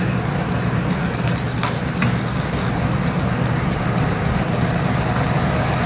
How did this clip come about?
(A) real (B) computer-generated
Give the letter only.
A